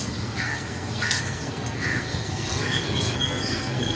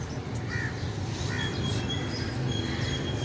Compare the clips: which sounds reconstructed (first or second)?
first